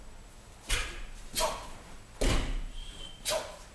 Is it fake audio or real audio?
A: real